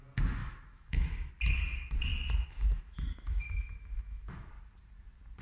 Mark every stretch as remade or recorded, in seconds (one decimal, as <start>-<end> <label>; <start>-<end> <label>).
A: 0.0-0.4 recorded; 0.4-1.3 remade; 1.3-2.1 recorded; 2.1-4.5 remade; 4.5-5.4 recorded